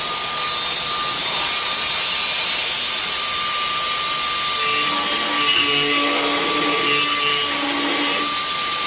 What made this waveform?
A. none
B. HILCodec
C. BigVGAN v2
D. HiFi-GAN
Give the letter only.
A